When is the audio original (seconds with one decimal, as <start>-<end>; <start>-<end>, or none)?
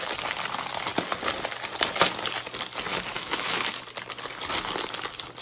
0.0-2.9; 3.8-5.4